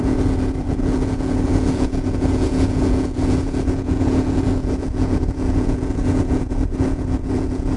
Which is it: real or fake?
fake